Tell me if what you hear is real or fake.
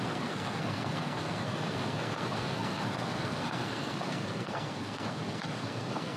fake